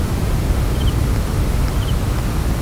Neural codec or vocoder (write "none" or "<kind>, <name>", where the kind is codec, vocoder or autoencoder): none